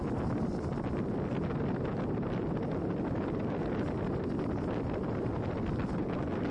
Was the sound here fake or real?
real